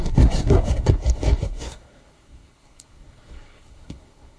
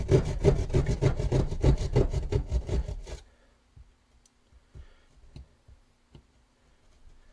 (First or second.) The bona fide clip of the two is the second